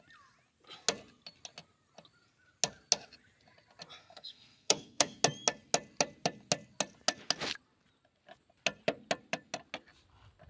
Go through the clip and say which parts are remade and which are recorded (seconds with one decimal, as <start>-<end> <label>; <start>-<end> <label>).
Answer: 0.0-4.0 recorded; 4.0-5.2 remade; 5.2-10.5 recorded